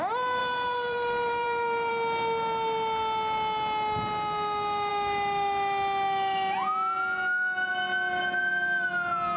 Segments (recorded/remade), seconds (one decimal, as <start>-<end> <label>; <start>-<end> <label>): 0.0-0.4 recorded; 0.4-1.9 remade; 1.9-9.4 recorded